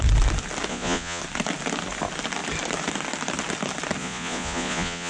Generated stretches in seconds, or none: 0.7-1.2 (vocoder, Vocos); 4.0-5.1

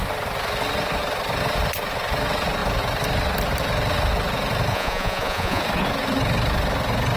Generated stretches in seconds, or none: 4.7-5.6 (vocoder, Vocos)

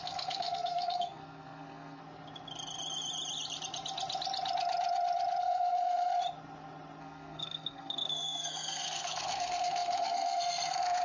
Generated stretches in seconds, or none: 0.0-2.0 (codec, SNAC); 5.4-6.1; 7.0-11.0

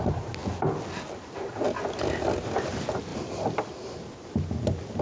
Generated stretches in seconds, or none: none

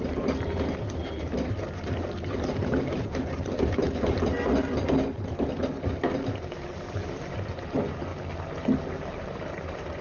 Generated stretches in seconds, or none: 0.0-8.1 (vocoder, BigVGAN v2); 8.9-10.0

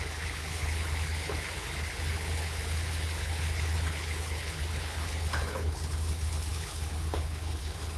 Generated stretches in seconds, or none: 0.0-8.0 (codec, HILCodec)

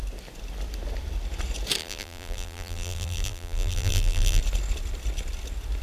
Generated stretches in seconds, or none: 1.8-4.4 (vocoder, BigVGAN v2)

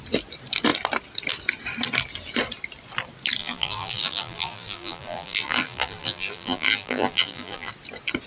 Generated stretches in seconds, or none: 3.4-7.7 (vocoder, BigVGAN v2)